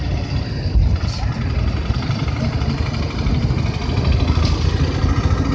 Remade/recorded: recorded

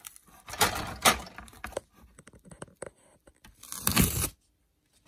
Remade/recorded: remade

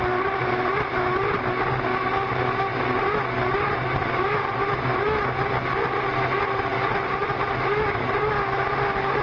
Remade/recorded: recorded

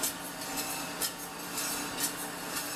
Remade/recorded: recorded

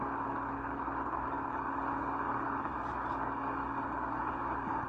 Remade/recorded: remade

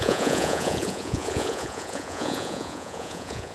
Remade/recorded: remade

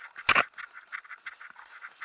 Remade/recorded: recorded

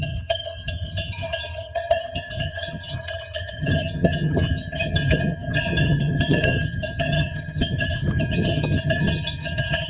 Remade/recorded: remade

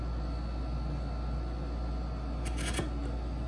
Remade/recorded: recorded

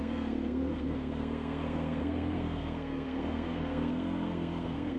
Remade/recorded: remade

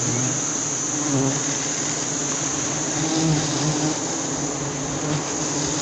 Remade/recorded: recorded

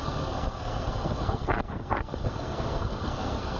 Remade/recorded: remade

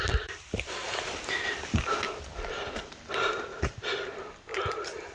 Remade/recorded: recorded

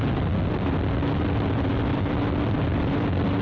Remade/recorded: remade